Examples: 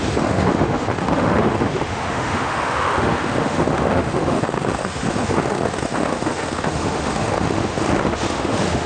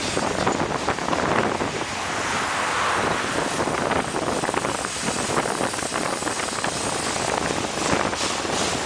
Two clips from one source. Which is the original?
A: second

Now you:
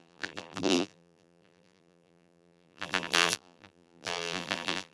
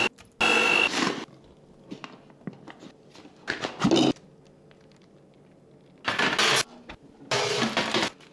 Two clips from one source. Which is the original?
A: second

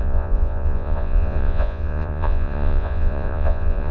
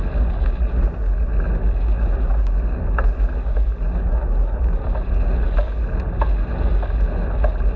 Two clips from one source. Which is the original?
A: second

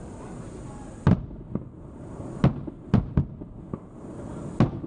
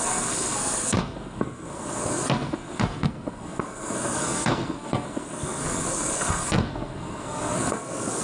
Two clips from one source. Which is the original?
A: first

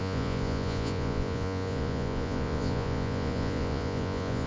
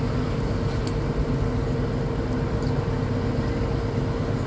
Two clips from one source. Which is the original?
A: second